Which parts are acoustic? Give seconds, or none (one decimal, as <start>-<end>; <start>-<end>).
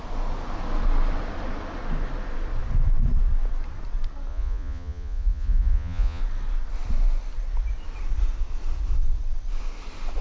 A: 0.0-4.3; 6.2-10.2